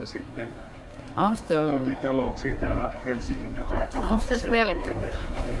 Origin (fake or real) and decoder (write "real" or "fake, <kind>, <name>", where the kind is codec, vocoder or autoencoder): fake, codec, SNAC